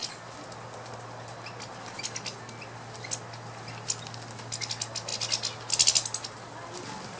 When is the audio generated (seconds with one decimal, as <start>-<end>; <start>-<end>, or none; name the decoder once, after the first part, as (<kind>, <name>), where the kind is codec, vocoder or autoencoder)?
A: none